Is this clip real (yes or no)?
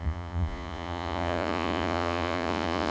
no